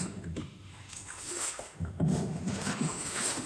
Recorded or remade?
remade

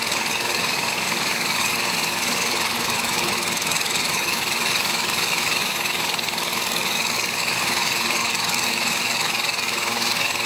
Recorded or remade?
remade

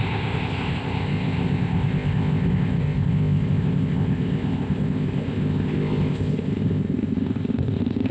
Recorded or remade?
remade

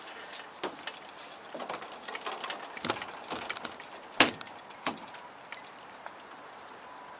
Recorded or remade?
recorded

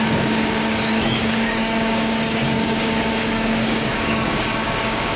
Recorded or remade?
remade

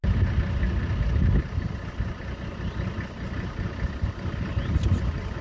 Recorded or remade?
recorded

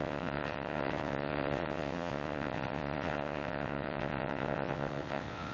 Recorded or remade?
remade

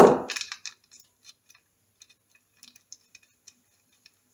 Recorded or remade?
recorded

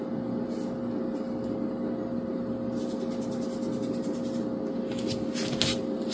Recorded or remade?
recorded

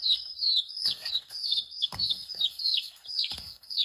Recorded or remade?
remade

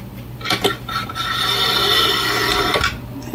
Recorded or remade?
remade